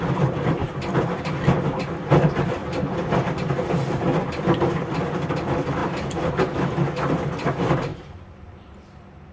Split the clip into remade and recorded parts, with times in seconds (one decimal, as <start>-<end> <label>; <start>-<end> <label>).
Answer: 0.0-9.3 remade